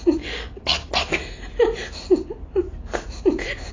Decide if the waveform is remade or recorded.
recorded